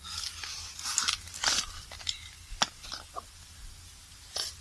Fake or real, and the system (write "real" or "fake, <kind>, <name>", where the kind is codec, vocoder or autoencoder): real